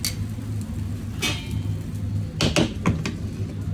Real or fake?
real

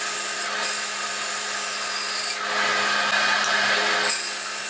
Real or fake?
real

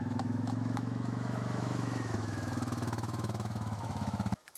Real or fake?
fake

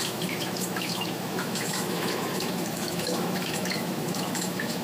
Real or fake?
fake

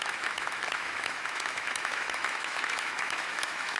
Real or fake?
fake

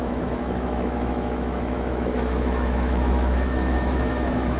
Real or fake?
fake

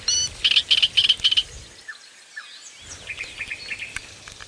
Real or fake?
real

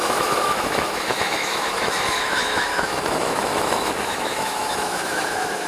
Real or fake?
fake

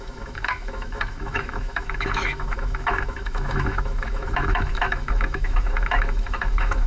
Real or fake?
fake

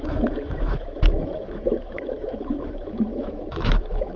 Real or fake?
fake